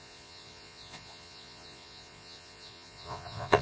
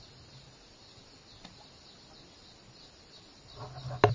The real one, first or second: second